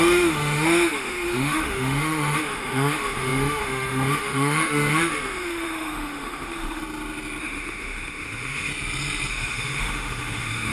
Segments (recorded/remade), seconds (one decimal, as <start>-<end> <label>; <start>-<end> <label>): 0.0-6.8 remade; 6.8-7.4 recorded; 7.4-8.7 remade; 8.7-9.3 recorded; 9.3-10.7 remade